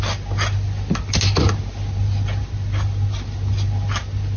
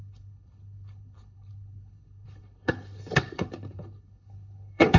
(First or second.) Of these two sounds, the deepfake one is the second